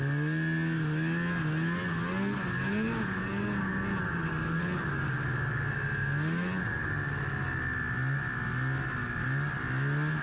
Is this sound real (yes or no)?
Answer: yes